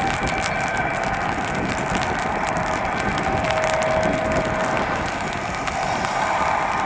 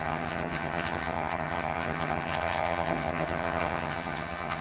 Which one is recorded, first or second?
first